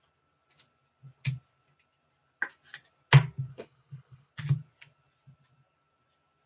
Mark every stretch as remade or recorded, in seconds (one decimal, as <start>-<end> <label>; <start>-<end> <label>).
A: 0.0-3.5 recorded; 3.5-4.3 remade; 4.3-6.5 recorded